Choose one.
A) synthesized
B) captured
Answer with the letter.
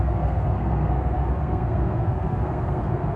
A